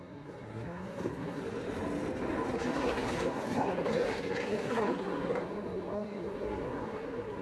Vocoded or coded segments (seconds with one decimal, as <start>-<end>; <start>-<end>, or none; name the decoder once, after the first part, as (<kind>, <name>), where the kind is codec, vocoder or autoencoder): 0.0-1.4 (codec, SNAC); 2.5-7.4